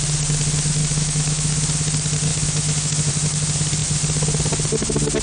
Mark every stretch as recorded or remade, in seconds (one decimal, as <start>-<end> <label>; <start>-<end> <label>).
0.0-0.8 recorded; 0.8-1.5 remade; 1.5-2.3 recorded; 2.3-3.1 remade; 3.1-5.2 recorded